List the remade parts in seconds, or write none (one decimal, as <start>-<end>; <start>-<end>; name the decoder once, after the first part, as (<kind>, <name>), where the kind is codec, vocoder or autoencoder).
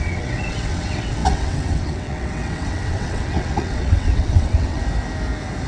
0.0-4.8 (vocoder, WaveNeXt)